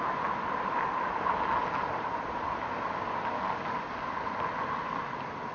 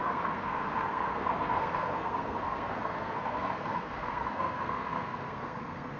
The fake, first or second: second